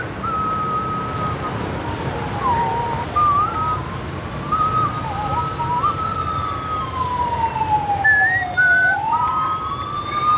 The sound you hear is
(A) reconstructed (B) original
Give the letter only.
B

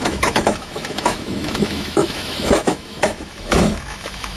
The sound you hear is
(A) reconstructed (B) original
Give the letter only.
A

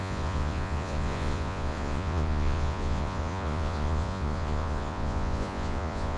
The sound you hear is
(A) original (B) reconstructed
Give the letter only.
B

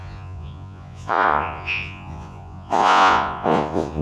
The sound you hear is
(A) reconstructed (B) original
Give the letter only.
A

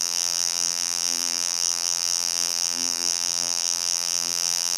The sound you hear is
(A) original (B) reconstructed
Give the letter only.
B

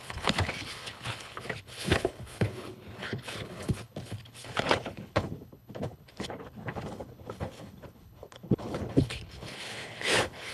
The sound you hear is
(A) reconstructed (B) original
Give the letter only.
A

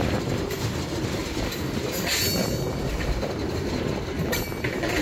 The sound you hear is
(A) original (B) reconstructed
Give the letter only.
B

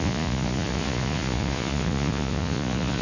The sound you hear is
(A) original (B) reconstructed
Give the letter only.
B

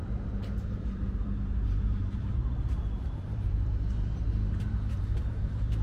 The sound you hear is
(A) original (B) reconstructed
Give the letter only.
B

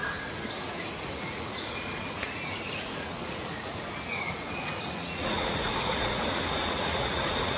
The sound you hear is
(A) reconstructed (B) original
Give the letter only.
A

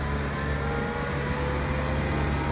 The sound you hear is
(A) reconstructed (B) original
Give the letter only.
B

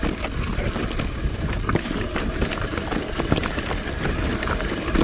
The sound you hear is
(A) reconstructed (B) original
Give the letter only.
B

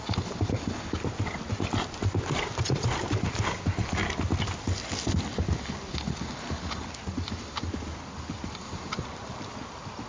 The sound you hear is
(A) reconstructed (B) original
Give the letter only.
B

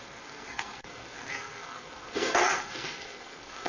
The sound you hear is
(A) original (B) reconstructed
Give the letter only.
B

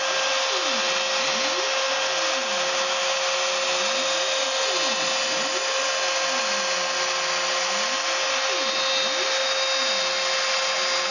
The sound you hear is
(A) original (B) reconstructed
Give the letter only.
A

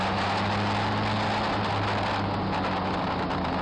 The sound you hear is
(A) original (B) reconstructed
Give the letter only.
A